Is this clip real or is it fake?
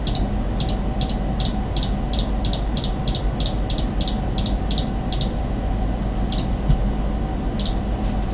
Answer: real